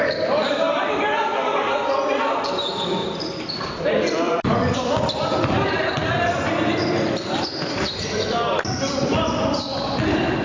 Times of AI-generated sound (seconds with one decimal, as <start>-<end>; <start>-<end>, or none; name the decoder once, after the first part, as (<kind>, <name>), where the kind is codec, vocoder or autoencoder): 0.0-10.4 (vocoder, BigVGAN v2)